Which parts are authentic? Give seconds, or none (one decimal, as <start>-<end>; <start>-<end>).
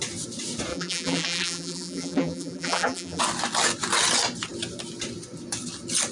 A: 0.0-0.7; 3.2-6.1